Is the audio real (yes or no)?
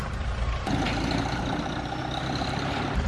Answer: yes